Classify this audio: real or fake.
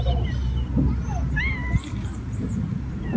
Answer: real